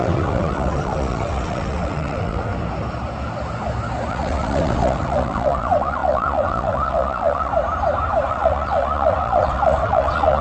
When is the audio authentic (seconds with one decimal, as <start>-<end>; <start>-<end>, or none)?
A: 2.5-4.1; 7.5-8.3